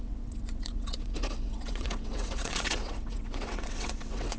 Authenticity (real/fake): fake